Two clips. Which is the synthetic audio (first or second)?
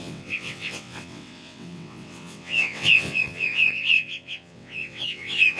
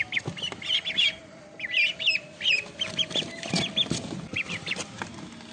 first